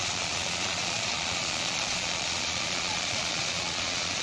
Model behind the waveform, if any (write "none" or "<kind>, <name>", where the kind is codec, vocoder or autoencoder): vocoder, Vocos